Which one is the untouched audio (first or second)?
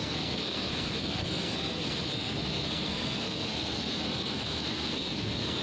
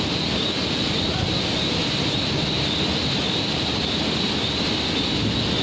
second